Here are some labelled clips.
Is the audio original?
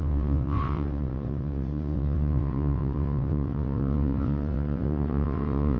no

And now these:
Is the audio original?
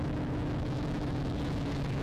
no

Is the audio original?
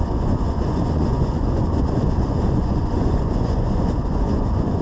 no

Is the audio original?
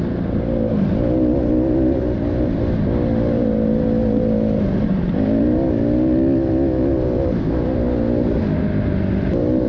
yes